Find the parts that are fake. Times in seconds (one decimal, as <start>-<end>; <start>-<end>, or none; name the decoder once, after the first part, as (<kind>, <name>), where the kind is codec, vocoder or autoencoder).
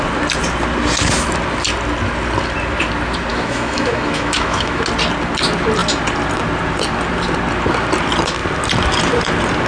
3.3-4.8 (autoencoder, DAC-VAE)